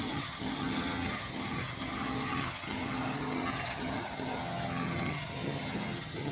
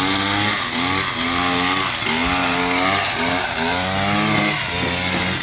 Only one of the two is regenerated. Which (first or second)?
first